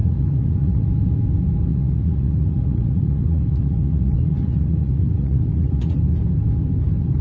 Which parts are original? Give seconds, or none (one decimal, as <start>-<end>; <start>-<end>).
0.9-1.7; 6.0-7.2